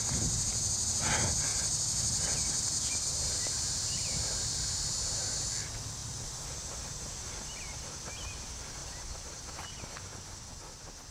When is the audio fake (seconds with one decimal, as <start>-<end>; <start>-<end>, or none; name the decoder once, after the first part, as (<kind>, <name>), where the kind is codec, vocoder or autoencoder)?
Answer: 1.5-5.5 (vocoder, BigVGAN v2); 6.0-7.6; 8.8-9.5